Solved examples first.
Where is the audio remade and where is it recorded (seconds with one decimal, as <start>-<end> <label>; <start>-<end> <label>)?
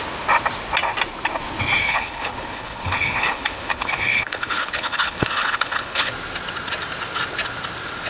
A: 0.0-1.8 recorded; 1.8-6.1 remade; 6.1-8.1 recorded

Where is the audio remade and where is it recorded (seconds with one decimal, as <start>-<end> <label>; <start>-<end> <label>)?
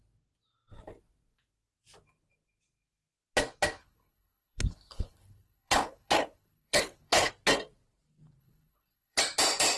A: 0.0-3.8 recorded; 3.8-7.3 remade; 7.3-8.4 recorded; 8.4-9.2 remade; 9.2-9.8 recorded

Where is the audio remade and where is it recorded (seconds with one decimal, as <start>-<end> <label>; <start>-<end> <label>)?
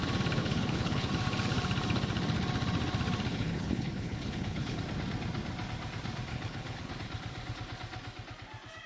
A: 0.0-0.4 recorded; 0.4-1.1 remade; 1.1-3.3 recorded; 3.3-4.8 remade; 4.8-6.3 recorded; 6.3-6.9 remade; 6.9-8.9 recorded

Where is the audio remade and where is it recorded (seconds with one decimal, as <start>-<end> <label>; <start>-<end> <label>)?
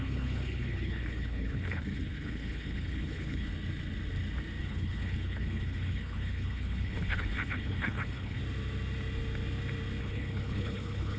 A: 0.0-3.5 remade; 3.5-4.6 recorded; 4.6-8.4 remade; 8.4-10.0 recorded; 10.0-11.2 remade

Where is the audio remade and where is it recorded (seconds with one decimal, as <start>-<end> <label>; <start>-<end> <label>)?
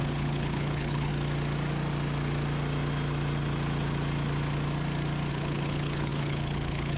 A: 0.0-1.1 remade; 1.1-5.3 recorded; 5.3-7.0 remade